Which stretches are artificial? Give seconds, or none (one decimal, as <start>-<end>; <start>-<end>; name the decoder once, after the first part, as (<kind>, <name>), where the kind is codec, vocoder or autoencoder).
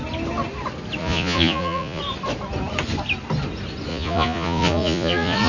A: 1.0-2.0 (vocoder, Vocos); 3.9-5.5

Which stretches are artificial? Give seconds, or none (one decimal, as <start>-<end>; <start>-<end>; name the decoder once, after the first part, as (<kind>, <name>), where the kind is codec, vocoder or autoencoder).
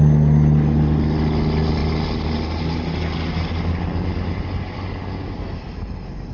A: none